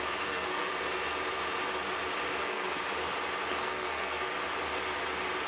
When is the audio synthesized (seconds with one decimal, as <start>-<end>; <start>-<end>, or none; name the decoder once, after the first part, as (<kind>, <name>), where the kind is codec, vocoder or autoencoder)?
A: 0.0-0.7 (codec, SNAC); 2.4-2.8; 3.5-4.3